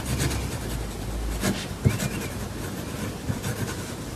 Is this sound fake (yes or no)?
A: no